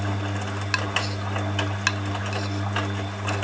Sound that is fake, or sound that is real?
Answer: real